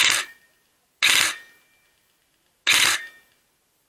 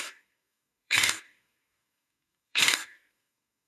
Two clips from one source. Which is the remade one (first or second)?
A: second